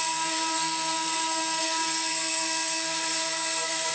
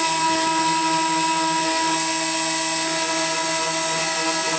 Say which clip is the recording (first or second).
second